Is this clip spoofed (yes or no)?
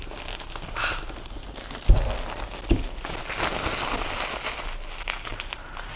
no